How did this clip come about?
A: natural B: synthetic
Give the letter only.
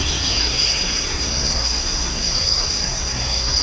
B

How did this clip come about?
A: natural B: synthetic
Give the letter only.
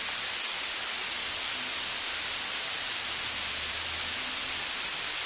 A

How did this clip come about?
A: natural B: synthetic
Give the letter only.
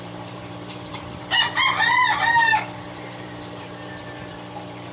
B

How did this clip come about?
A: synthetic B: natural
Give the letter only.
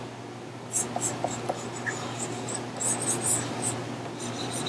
B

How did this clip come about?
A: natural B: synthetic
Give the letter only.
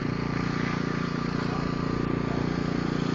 A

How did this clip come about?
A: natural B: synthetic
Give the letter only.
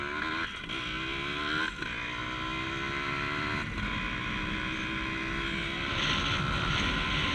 A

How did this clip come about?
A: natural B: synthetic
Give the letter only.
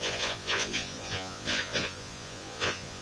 B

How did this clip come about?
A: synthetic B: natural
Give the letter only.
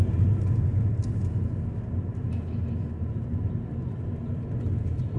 B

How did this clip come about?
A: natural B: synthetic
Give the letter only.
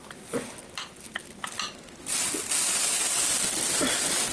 A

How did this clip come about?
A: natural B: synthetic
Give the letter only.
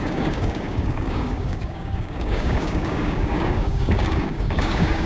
B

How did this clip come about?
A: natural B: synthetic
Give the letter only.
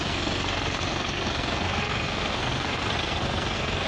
B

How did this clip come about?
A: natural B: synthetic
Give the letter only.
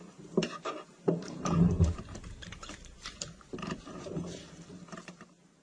B